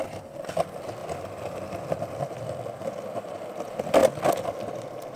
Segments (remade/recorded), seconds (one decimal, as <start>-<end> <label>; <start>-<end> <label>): 0.0-5.2 recorded